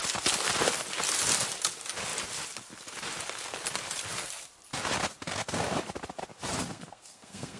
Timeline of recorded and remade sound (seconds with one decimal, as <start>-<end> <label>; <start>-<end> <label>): 0.0-6.7 recorded; 6.7-7.6 remade